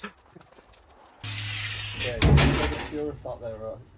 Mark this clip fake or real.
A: real